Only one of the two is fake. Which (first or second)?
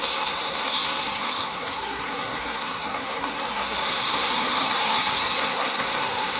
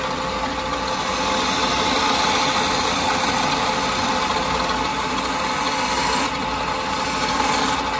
first